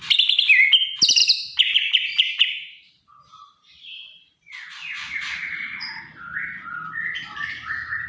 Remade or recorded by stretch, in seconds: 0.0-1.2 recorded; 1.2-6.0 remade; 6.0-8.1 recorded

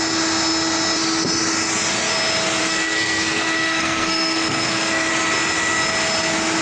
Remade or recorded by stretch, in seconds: 0.0-2.6 recorded; 2.6-5.1 remade; 5.1-6.6 recorded

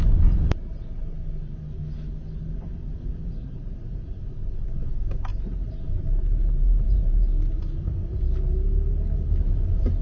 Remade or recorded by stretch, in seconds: 0.0-3.2 recorded; 3.2-4.2 remade; 4.2-5.3 recorded; 5.3-7.2 remade; 7.2-10.0 recorded